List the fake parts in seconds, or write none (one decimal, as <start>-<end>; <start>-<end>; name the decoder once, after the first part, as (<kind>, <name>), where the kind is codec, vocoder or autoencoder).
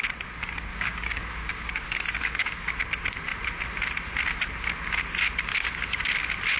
0.7-2.8 (codec, DAC); 5.5-6.0